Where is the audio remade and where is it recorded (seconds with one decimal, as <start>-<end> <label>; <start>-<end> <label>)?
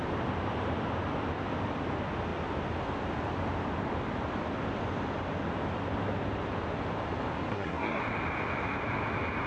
0.0-7.5 recorded; 7.5-8.0 remade; 8.0-9.5 recorded